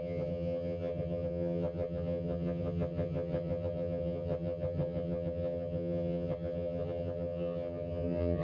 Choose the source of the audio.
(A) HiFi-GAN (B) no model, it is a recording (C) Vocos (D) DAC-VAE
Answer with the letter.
A